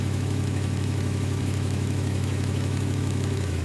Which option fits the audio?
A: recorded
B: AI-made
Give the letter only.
B